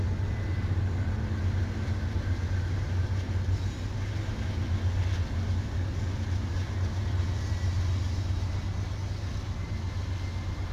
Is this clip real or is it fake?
real